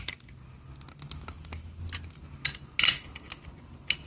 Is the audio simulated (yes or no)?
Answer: no